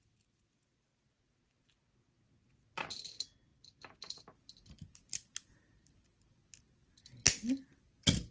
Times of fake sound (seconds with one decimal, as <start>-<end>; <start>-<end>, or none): none